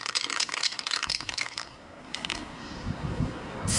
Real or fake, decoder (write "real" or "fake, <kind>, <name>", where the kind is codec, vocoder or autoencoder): fake, codec, SNAC